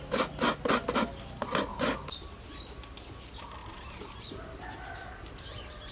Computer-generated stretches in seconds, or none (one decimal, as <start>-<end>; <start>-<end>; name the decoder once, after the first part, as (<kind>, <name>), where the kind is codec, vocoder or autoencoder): 1.7-2.6 (vocoder, BigVGAN v2); 3.6-4.3